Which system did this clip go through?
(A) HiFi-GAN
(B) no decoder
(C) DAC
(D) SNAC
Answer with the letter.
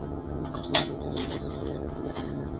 A